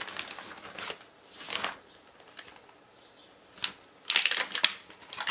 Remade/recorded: recorded